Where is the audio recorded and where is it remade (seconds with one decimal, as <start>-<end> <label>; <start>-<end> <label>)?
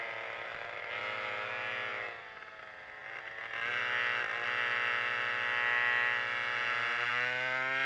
0.0-7.9 recorded